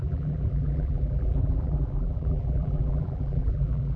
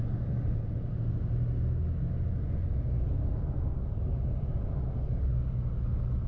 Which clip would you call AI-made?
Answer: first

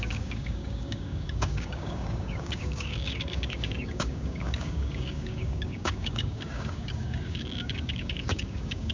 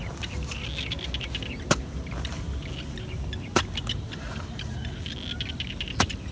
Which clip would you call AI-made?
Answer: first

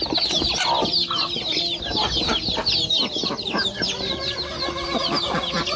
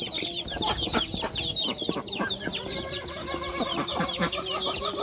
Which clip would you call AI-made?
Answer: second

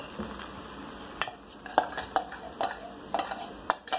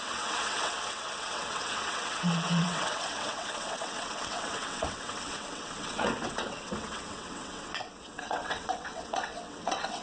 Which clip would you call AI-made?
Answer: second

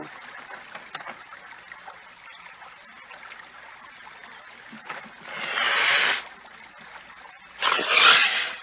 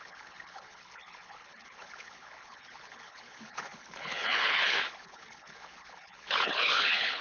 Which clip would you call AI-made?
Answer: second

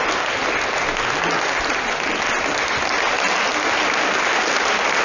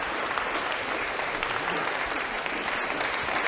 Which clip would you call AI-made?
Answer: second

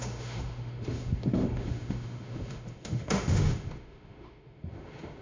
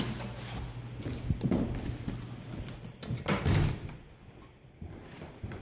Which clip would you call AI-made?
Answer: first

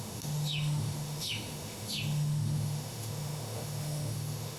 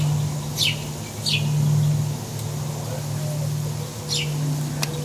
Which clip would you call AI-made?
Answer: first